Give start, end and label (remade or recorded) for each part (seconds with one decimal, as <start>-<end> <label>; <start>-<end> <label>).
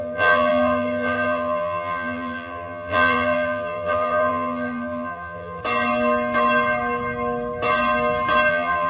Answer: 0.0-5.6 remade; 5.6-8.5 recorded; 8.5-8.9 remade